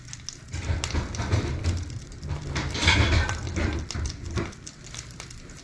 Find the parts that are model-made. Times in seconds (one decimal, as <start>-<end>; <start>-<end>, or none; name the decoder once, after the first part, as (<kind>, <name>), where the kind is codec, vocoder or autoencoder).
none